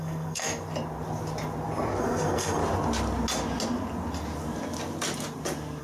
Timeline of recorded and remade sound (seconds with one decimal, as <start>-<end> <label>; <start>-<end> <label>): 0.0-0.5 remade; 0.5-2.0 recorded; 2.0-2.6 remade; 2.6-5.8 recorded